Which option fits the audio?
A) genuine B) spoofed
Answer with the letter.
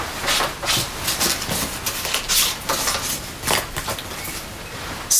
A